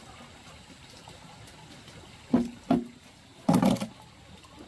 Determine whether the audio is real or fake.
real